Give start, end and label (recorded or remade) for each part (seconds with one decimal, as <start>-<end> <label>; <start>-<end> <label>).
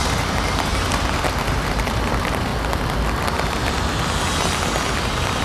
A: 0.0-2.5 remade; 2.5-5.4 recorded